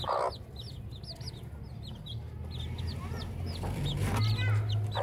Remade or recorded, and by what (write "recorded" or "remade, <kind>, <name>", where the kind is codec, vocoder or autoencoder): recorded